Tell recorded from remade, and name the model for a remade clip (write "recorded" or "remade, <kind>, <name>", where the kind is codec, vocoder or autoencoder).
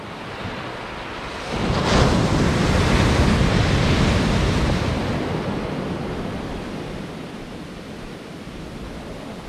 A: recorded